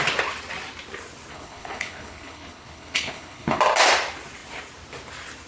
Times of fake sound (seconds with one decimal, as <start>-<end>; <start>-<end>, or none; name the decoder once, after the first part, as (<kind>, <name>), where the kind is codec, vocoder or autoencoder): 1.3-3.6 (codec, HILCodec)